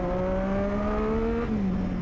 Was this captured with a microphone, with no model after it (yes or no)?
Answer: yes